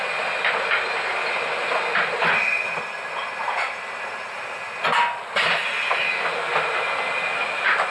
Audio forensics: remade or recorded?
recorded